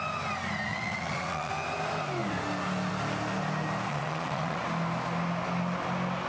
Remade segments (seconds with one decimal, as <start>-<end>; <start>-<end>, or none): 0.7-1.5; 3.9-4.6